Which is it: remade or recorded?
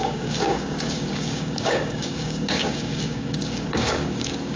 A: remade